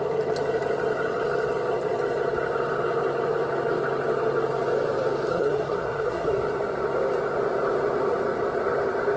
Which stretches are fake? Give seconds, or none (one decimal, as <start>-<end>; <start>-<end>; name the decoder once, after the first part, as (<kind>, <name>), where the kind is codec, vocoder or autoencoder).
5.3-6.3 (codec, SNAC)